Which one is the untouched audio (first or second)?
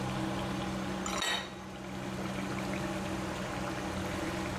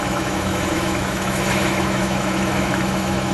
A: first